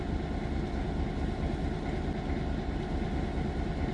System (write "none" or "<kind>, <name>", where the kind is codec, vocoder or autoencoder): none